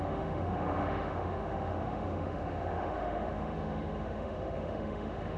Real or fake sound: fake